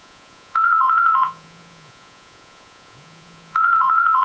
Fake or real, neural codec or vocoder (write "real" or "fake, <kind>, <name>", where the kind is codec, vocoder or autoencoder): fake, vocoder, Vocos